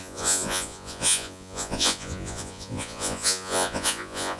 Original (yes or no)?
no